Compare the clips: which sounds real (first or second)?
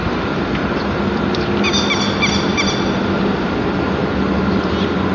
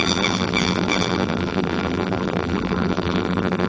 first